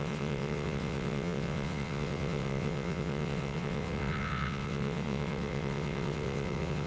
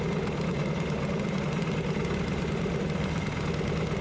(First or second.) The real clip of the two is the second